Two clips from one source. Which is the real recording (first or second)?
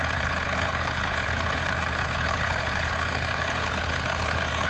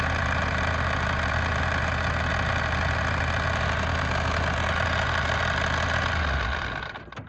second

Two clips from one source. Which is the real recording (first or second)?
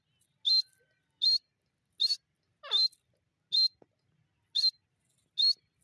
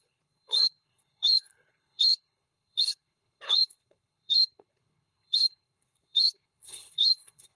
first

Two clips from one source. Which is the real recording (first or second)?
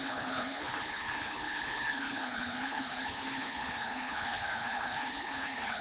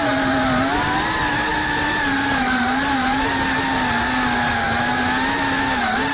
second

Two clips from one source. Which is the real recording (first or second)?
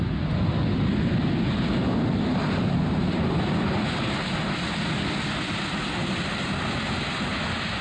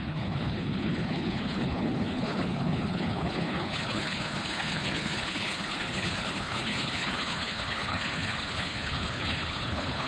first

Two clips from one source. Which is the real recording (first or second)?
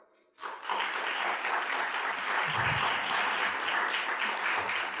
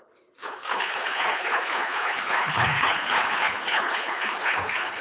first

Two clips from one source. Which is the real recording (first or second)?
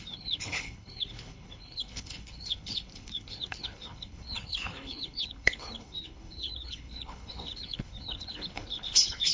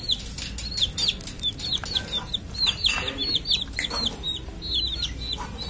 second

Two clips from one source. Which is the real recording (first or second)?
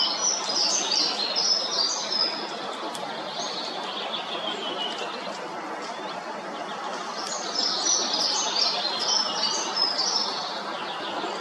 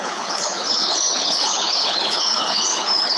first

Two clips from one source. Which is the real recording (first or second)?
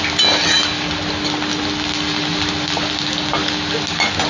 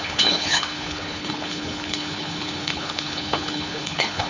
first